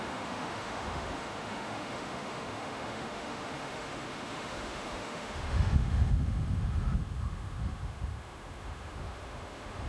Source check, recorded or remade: remade